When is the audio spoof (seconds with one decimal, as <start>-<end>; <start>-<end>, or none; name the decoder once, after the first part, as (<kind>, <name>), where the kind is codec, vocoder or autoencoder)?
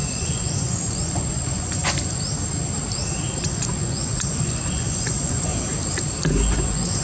0.0-1.8 (vocoder, Vocos); 3.4-5.5; 6.3-7.0